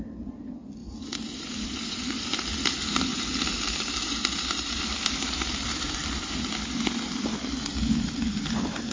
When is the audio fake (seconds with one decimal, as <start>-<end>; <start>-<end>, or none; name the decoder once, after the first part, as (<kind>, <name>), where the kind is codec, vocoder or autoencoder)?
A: 0.8-2.4 (vocoder, BigVGAN v2); 3.1-6.5